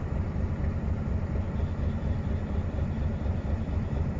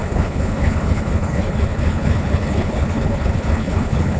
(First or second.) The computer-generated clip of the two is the second